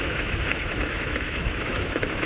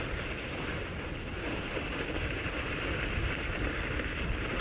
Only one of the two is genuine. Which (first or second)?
second